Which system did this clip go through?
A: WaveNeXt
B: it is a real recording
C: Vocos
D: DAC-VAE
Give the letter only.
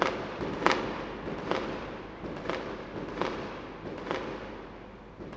B